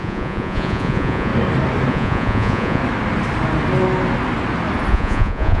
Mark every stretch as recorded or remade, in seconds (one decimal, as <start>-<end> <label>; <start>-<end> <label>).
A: 0.0-1.3 remade; 1.3-1.9 recorded; 1.9-2.8 remade; 2.8-4.9 recorded; 4.9-5.6 remade

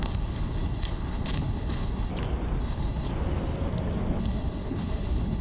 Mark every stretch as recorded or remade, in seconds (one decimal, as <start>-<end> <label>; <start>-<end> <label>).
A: 0.0-2.1 remade; 2.1-2.6 recorded; 2.6-3.1 remade; 3.1-4.2 recorded; 4.2-5.4 remade

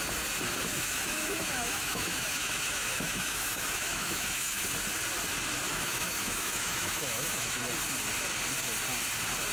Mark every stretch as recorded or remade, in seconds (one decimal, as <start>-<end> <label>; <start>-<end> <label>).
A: 0.0-0.7 recorded; 0.7-4.6 remade; 4.6-5.7 recorded; 5.7-7.6 remade; 7.6-9.5 recorded

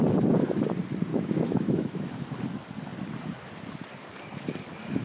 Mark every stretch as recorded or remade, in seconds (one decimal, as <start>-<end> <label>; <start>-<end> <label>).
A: 0.0-1.1 recorded; 1.1-2.2 remade; 2.2-5.0 recorded

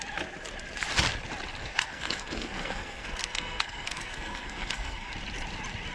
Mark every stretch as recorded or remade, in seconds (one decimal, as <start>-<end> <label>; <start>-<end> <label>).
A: 0.0-1.6 recorded; 1.6-5.1 remade; 5.1-5.9 recorded

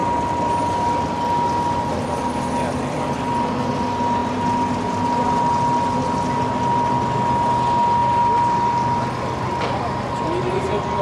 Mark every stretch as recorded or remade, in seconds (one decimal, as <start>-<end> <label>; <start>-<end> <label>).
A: 0.0-11.0 recorded

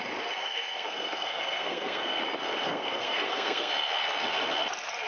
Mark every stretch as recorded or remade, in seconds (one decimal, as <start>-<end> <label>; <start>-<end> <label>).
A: 0.0-0.4 recorded; 0.4-2.2 remade; 2.2-2.6 recorded; 2.6-3.7 remade; 3.7-5.1 recorded

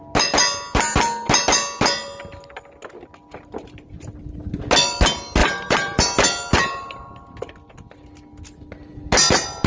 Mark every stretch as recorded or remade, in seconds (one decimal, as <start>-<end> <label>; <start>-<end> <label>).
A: 0.0-5.4 recorded; 5.4-6.0 remade; 6.0-9.7 recorded